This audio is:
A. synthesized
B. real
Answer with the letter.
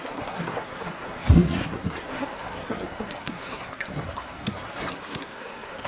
A